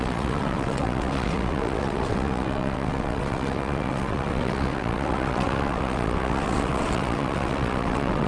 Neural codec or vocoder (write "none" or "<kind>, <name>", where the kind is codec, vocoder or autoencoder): vocoder, WaveNeXt